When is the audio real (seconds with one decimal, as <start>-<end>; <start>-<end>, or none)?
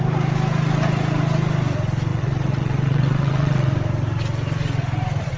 0.0-2.1; 3.7-5.4